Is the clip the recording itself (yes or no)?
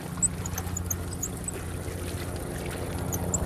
yes